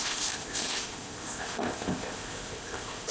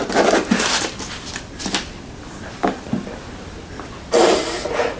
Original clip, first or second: second